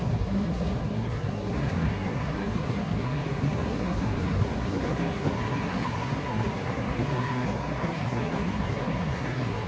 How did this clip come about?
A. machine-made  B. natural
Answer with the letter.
A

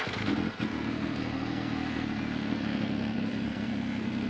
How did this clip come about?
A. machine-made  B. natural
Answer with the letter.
A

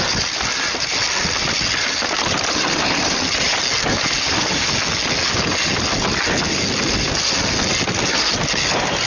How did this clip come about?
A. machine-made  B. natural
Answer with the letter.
B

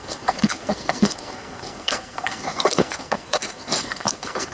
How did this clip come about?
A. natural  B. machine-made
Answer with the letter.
B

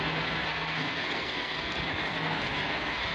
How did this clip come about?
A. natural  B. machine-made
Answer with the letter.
B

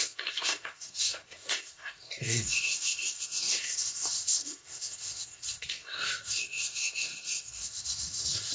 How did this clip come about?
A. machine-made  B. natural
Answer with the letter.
A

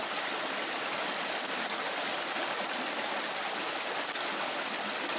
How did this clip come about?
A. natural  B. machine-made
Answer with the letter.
A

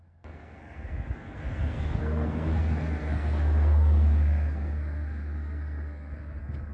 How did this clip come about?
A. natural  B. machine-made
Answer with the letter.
B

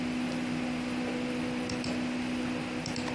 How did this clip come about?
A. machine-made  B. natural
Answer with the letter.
B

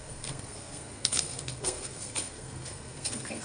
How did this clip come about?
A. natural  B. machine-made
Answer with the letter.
B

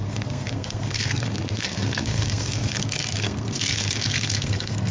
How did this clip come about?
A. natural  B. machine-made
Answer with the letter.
B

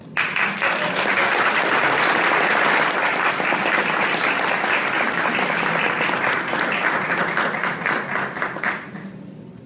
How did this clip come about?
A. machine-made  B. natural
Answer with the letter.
B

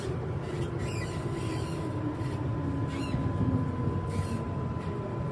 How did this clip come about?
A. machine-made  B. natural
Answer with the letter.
B